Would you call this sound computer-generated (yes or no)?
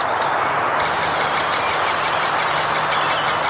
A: no